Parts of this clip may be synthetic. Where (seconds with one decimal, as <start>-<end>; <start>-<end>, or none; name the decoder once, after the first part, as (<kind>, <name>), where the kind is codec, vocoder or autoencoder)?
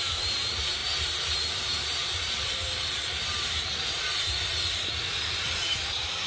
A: 0.0-6.3 (vocoder, BigVGAN v2)